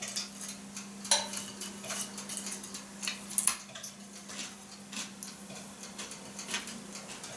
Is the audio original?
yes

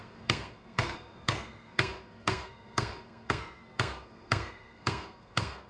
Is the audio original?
no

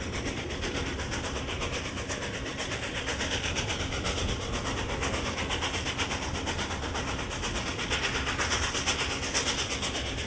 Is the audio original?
yes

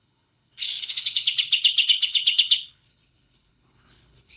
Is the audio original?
no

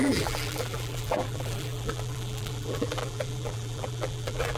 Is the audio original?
no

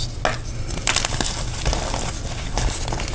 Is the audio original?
yes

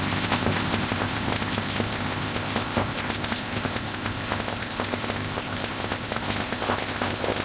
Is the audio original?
no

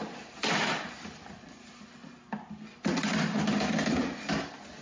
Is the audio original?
yes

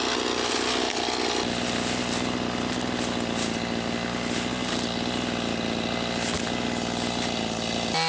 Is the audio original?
yes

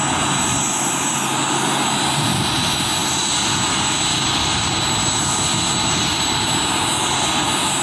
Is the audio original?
yes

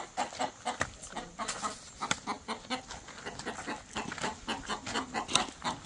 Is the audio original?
yes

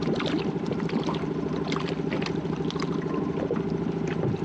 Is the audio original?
yes